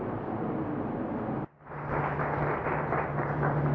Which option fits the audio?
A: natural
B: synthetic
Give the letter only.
A